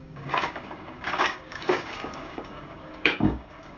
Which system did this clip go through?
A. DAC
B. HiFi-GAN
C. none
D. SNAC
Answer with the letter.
A